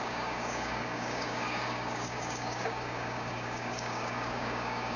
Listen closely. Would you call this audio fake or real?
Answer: fake